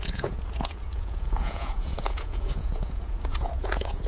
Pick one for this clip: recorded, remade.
remade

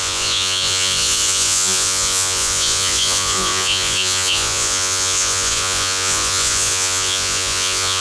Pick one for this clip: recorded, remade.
remade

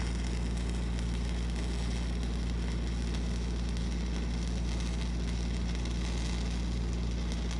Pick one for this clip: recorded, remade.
recorded